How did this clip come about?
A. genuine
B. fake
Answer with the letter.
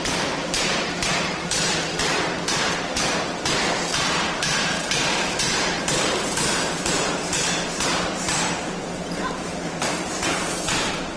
B